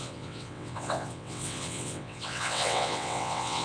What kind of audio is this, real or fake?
fake